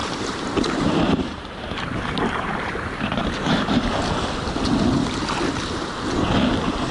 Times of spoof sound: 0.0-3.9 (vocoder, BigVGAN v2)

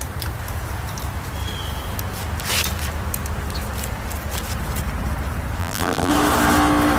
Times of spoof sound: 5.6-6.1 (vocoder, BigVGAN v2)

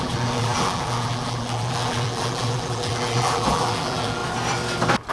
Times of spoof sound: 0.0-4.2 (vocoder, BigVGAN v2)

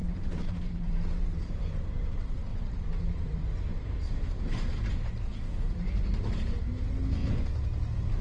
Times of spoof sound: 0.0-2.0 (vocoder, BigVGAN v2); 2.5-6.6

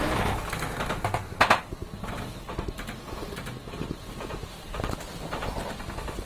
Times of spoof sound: 3.6-5.1 (vocoder, BigVGAN v2)

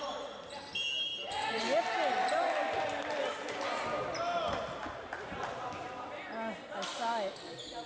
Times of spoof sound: none